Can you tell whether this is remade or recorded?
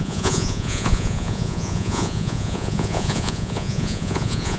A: remade